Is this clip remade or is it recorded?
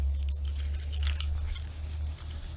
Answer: recorded